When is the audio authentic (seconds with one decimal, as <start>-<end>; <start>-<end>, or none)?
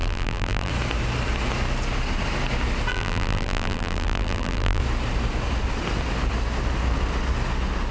0.7-2.9; 4.8-7.9